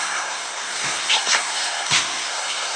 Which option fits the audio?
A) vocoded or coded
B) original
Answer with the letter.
A